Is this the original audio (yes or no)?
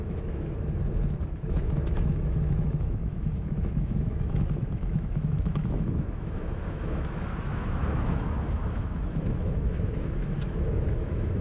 no